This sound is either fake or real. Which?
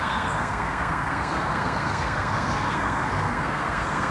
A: fake